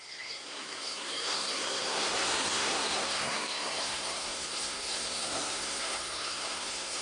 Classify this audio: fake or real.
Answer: fake